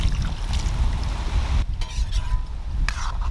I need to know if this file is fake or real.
real